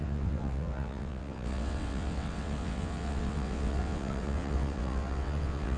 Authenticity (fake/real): fake